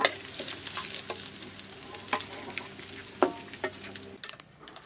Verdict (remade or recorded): recorded